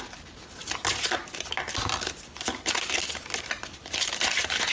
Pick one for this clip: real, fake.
real